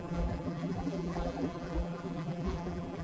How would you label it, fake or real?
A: fake